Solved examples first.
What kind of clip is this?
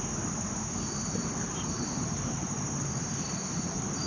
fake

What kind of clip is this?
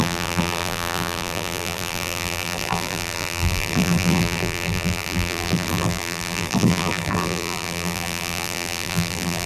fake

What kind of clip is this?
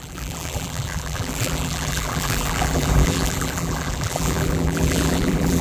fake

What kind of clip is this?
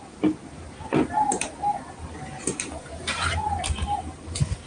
fake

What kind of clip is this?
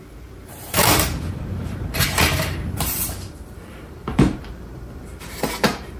fake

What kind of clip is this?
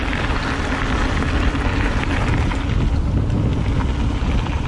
real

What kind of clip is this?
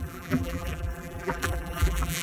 fake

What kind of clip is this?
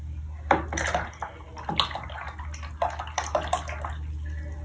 real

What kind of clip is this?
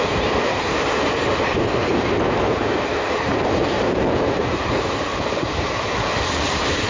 fake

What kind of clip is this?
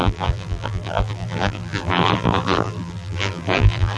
fake